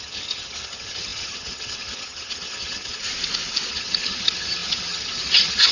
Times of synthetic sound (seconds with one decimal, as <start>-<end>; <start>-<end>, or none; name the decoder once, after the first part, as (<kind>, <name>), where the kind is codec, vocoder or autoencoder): 0.0-3.0 (vocoder, HiFi-GAN); 3.7-5.7